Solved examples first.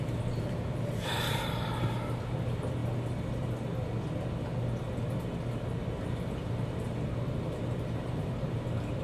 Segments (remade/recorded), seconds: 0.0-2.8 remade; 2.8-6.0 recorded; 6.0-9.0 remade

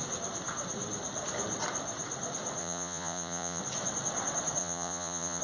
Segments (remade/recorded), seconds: 0.0-2.6 recorded; 2.6-3.6 remade; 3.6-4.6 recorded; 4.6-5.4 remade

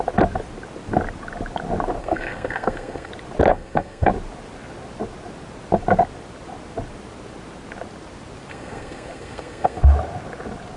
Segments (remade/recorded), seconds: 0.0-2.0 recorded; 2.0-3.1 remade; 3.1-3.5 recorded; 3.5-4.1 remade; 4.1-8.5 recorded; 8.5-9.8 remade; 9.8-10.8 recorded